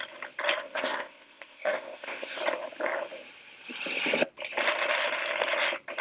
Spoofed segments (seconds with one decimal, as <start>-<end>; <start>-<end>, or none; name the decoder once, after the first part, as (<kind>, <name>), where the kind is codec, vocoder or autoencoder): 0.6-2.4 (codec, ZipCodec)

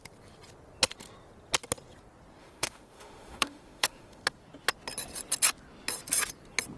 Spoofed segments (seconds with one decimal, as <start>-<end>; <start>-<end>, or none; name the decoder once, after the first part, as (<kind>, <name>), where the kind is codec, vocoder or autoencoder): 2.4-4.2 (autoencoder, DAC-VAE)

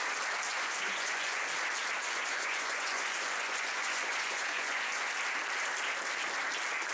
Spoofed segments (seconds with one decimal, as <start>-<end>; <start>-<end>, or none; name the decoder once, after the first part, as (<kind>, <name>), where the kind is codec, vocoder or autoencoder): 0.5-1.4 (vocoder, Vocos); 2.0-5.1

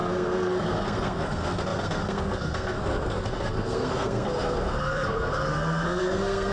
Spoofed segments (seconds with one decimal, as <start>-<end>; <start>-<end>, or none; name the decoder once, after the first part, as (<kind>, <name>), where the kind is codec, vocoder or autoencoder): 0.0-6.5 (codec, SNAC)

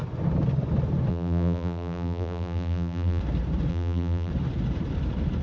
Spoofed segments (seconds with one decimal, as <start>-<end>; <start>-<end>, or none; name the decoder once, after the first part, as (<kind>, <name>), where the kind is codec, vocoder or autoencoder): 1.1-3.2 (vocoder, BigVGAN v2); 3.7-4.3

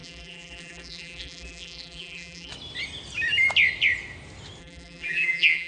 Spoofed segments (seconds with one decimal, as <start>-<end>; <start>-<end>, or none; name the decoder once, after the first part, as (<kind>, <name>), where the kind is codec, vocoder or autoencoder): 0.0-2.5 (vocoder, BigVGAN v2); 4.6-5.7